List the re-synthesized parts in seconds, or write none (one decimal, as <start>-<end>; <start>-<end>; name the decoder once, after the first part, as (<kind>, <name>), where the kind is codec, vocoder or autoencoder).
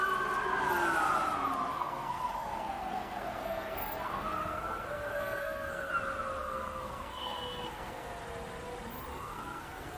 1.7-5.9 (codec, SNAC); 6.4-8.1; 9.1-10.0